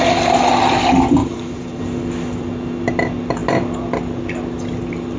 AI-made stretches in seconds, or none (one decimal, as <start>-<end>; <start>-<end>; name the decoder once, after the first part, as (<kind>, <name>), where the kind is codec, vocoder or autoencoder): 1.2-1.8 (vocoder, BigVGAN v2)

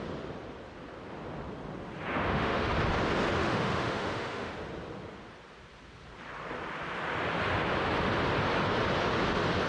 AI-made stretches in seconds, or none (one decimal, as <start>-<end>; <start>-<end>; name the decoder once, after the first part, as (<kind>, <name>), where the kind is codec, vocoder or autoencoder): 2.1-2.7 (autoencoder, DAC-VAE); 3.4-4.5

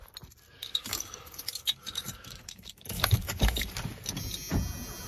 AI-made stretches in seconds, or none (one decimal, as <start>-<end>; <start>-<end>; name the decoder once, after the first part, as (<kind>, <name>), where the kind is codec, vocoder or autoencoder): 0.6-3.7 (codec, DAC)

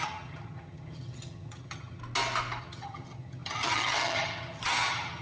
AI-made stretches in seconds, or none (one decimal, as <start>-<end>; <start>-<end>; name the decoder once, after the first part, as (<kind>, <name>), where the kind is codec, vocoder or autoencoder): 0.0-2.0 (vocoder, HiFi-GAN); 2.6-5.2